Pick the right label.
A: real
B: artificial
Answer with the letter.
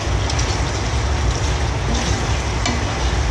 A